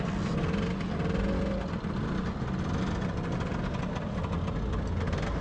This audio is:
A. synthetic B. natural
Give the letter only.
B